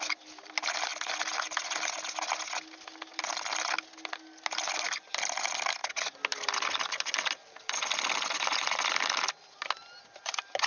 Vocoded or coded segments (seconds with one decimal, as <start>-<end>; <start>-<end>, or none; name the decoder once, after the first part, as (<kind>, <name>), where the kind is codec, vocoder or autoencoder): none

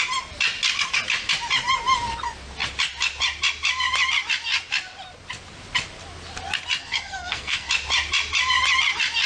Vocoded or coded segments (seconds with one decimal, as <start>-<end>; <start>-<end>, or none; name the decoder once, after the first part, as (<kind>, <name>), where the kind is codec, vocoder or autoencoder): 6.8-7.7 (codec, SNAC)

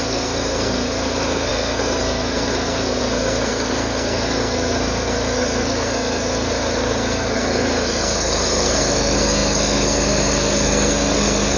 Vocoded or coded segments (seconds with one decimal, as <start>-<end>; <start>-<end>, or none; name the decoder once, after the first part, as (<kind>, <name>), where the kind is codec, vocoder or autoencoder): 0.0-11.6 (codec, SNAC)

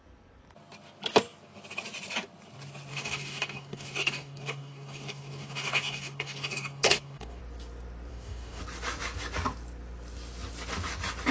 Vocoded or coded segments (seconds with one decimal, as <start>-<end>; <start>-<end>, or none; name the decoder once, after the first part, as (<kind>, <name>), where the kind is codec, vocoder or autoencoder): 2.9-7.4 (codec, DAC); 8.1-8.6

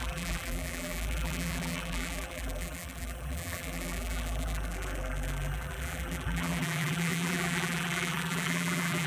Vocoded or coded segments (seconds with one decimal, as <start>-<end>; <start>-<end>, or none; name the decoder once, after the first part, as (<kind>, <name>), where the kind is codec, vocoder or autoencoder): 0.0-9.1 (vocoder, BigVGAN v2)